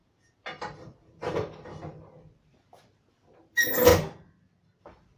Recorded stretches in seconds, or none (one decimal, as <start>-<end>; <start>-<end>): 0.0-5.2